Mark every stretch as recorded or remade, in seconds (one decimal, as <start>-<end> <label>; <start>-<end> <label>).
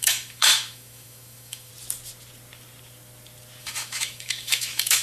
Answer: 0.0-1.7 remade; 1.7-3.6 recorded; 3.6-5.0 remade